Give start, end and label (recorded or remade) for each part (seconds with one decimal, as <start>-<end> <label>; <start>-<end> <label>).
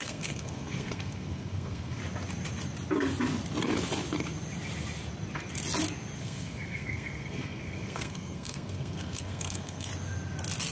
0.0-2.0 remade; 2.0-6.2 recorded; 6.2-9.9 remade; 9.9-10.7 recorded